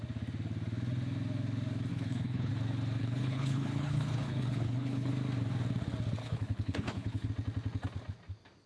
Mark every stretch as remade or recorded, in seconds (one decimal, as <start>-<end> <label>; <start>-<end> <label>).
0.0-1.9 recorded; 1.9-2.5 remade; 2.5-3.0 recorded; 3.0-5.1 remade; 5.1-6.2 recorded; 6.2-7.3 remade; 7.3-8.7 recorded